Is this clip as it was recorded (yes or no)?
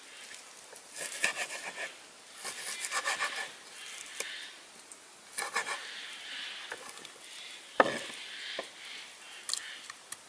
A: yes